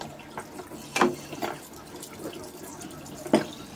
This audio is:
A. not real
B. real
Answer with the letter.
B